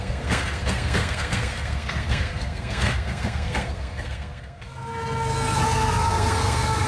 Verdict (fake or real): fake